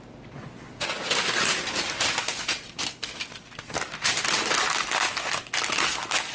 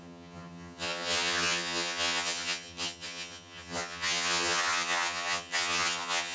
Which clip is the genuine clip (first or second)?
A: first